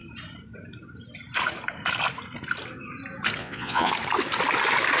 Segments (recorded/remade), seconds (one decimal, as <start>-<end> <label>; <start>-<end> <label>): 0.0-3.4 recorded; 3.4-3.9 remade; 3.9-5.0 recorded